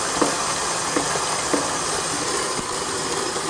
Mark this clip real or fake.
real